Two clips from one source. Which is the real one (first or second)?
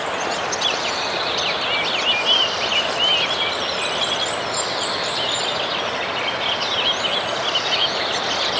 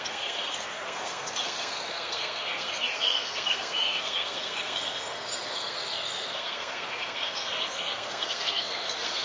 first